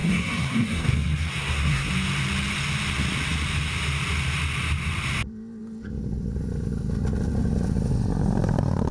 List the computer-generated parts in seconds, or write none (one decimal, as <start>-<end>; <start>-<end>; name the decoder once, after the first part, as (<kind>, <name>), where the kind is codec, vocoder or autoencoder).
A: 0.0-1.9 (codec, SNAC)